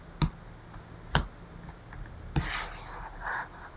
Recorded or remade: recorded